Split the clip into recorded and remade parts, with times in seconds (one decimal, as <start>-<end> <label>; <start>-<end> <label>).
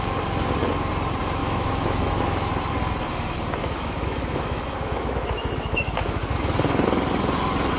0.0-1.4 recorded; 1.4-2.5 remade; 2.5-3.6 recorded; 3.6-6.4 remade; 6.4-7.8 recorded